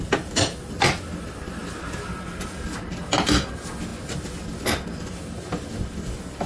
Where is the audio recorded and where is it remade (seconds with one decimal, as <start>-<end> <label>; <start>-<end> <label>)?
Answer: 0.0-6.5 recorded